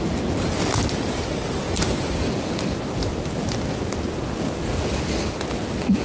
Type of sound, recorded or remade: recorded